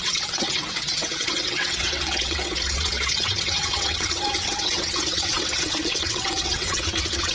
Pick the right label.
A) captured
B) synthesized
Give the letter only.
B